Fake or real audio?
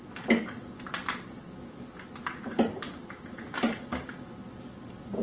real